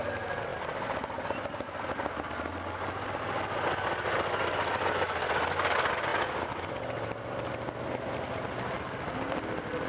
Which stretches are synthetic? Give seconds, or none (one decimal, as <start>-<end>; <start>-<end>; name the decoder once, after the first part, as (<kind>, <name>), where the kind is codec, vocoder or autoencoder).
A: none